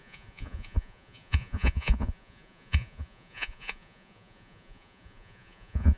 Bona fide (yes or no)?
no